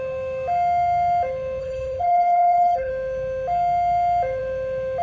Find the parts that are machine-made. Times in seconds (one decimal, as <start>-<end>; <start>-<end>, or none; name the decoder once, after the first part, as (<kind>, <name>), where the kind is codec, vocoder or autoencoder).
1.6-2.9 (codec, HILCodec)